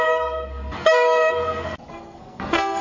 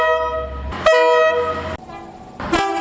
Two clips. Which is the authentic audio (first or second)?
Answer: second